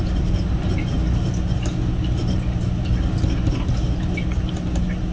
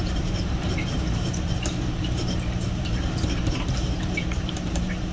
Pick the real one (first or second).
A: first